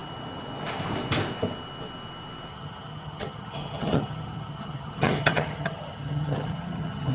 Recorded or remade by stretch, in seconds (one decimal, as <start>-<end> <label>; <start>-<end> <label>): 0.0-2.5 recorded; 2.5-7.1 remade